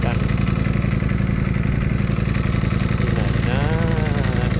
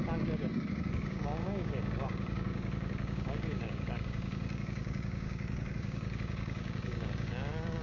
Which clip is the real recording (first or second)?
first